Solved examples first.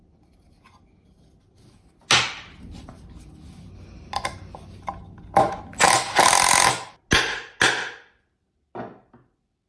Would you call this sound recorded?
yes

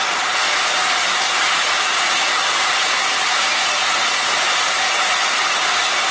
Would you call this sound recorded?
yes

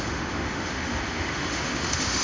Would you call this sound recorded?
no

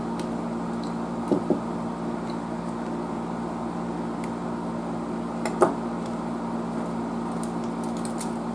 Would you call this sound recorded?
yes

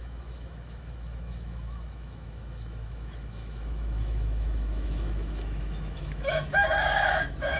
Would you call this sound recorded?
no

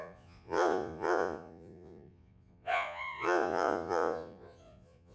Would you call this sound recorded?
no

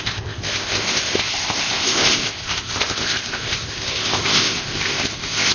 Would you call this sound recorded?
no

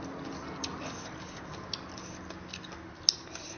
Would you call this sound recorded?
yes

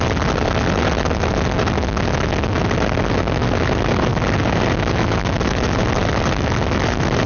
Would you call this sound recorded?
yes